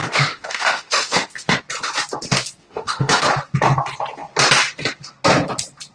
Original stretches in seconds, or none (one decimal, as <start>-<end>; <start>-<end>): 1.6-2.6; 3.3-5.9